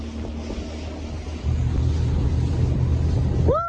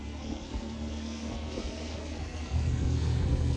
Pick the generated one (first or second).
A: second